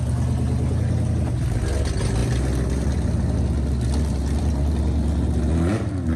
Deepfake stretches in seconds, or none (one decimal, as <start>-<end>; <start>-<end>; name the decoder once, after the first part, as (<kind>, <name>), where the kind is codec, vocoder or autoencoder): none